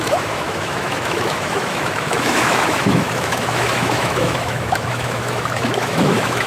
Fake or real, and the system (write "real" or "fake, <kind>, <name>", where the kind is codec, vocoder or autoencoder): fake, autoencoder, DAC-VAE